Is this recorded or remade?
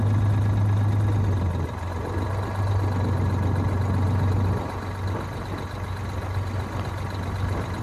recorded